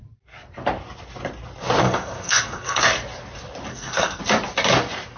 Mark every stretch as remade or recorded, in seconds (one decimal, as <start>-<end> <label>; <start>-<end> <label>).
0.0-1.8 recorded; 1.8-2.8 remade; 2.8-3.7 recorded; 3.7-4.2 remade; 4.2-5.2 recorded